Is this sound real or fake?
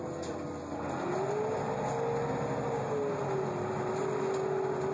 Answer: real